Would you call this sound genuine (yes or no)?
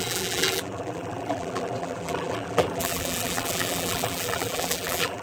no